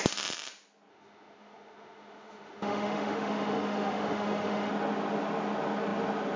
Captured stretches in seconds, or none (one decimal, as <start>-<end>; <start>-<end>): 0.0-0.9; 4.7-6.4